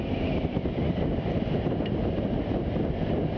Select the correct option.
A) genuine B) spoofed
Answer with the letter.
A